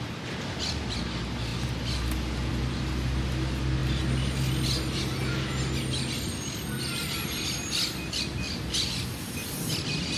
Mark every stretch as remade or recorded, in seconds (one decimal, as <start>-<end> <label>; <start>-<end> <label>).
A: 0.0-10.2 recorded